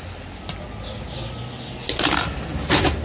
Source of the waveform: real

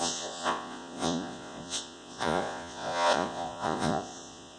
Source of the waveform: fake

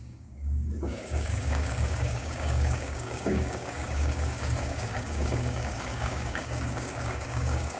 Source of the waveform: fake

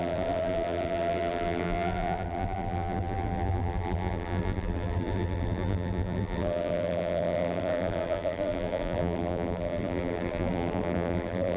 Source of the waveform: fake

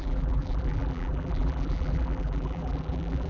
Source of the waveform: fake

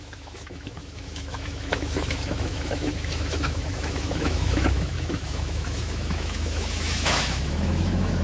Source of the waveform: fake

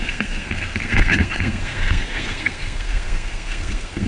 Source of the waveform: fake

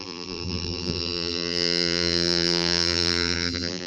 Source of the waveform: fake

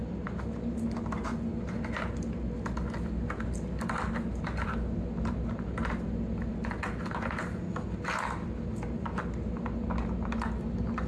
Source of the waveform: real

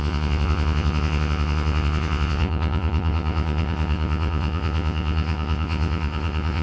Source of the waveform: fake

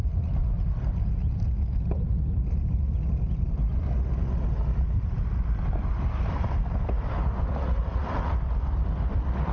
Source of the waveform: real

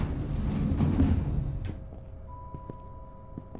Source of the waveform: real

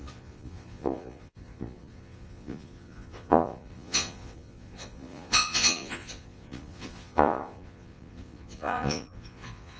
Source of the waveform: fake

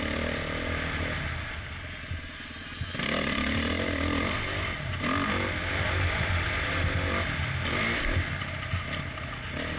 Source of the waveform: real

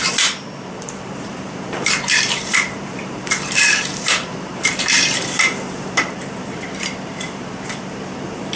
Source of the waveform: fake